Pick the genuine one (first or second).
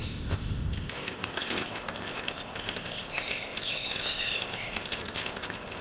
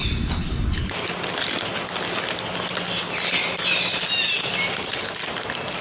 second